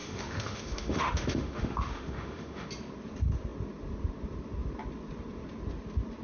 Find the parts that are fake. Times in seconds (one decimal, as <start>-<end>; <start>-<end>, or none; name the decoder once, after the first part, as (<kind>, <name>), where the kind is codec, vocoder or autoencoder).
0.0-2.7 (autoencoder, DAC-VAE)